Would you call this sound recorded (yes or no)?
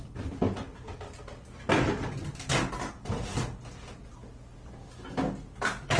yes